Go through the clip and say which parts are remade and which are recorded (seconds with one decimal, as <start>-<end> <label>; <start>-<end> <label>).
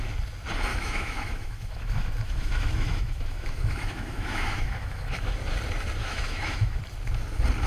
0.0-0.7 recorded; 0.7-5.3 remade; 5.3-6.0 recorded; 6.0-6.8 remade; 6.8-7.7 recorded